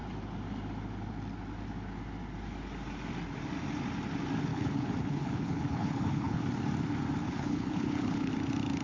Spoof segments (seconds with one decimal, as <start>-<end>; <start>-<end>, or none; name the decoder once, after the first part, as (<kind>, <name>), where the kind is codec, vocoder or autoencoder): 4.5-6.4 (codec, HILCodec); 7.2-8.3